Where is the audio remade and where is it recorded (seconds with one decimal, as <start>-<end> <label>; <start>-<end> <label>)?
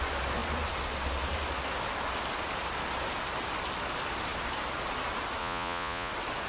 0.0-5.4 recorded; 5.4-6.1 remade; 6.1-6.5 recorded